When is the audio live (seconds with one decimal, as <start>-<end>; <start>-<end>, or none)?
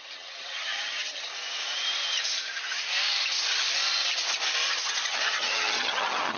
1.3-5.1